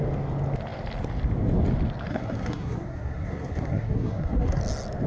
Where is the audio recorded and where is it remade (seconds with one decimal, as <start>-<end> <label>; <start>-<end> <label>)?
0.0-2.1 recorded; 2.1-4.6 remade; 4.6-5.1 recorded

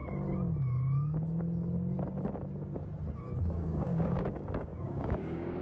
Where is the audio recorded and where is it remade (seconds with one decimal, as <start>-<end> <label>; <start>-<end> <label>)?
0.0-3.4 recorded; 3.4-5.6 remade

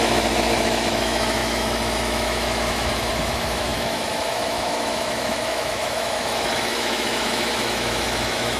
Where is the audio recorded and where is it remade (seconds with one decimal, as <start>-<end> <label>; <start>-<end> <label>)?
0.0-8.6 remade